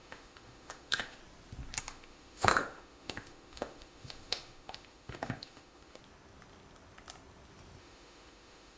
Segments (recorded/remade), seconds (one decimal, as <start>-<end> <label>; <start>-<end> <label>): 0.0-1.2 remade; 1.2-1.8 recorded; 1.8-6.0 remade; 6.0-7.8 recorded; 7.8-8.8 remade